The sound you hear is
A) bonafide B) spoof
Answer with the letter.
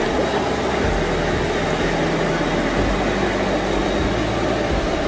A